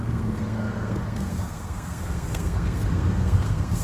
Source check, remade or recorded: remade